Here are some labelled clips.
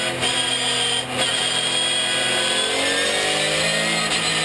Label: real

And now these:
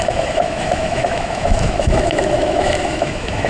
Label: fake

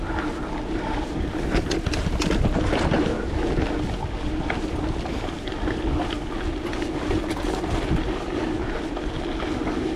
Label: real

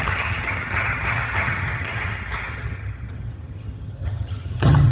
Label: fake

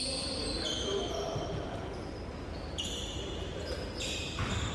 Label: real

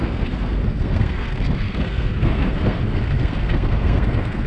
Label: fake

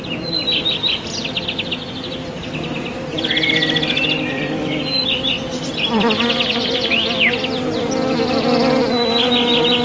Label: real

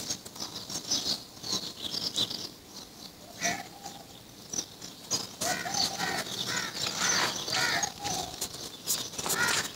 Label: real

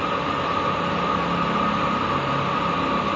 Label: real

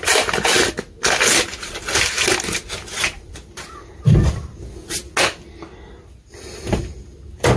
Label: real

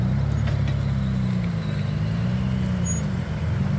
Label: real